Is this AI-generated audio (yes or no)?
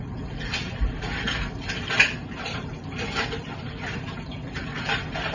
no